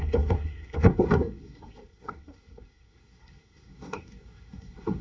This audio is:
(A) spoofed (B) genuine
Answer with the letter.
A